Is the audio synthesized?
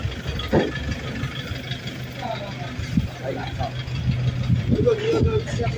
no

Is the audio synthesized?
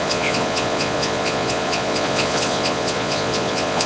yes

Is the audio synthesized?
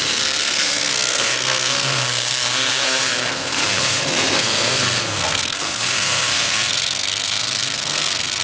yes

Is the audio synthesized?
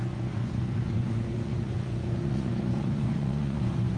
yes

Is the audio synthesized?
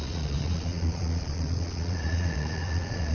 yes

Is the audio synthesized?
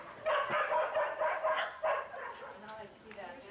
no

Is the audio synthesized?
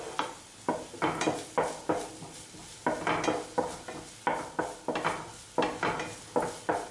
no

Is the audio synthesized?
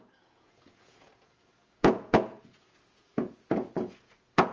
yes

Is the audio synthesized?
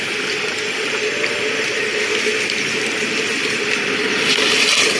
no